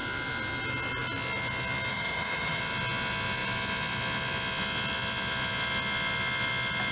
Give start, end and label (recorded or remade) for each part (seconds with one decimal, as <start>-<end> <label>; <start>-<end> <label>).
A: 0.0-1.9 recorded; 1.9-2.6 remade; 2.6-6.9 recorded